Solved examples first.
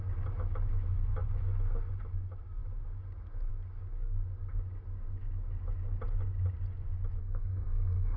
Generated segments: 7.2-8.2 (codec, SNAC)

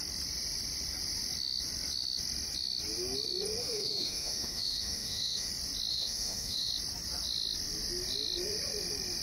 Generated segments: 3.6-5.5 (autoencoder, DAC-VAE); 5.9-6.7

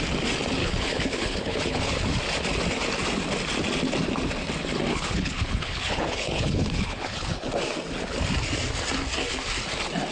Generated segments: 0.6-2.2 (codec, HILCodec); 4.9-7.5

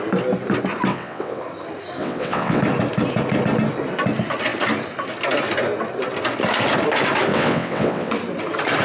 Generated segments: 0.9-1.4 (vocoder, WaveNeXt); 2.0-2.6; 7.3-8.1

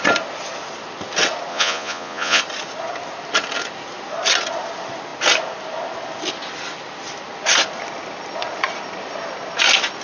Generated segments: 1.5-2.4 (vocoder, Vocos)

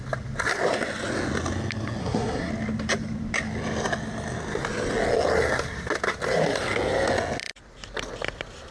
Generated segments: 2.0-2.5 (codec, SNAC)